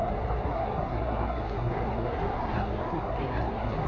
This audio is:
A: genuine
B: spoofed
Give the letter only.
B